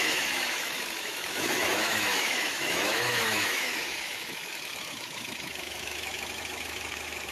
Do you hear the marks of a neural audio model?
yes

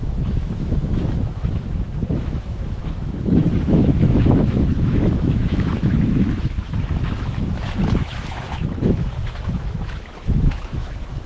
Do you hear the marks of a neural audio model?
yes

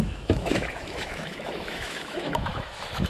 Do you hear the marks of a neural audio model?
yes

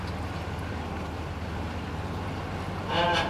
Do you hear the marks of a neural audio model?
no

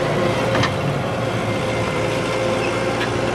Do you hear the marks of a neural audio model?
no